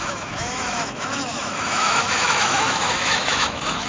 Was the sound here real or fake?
fake